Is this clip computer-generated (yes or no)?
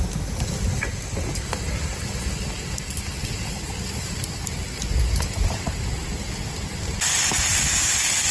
no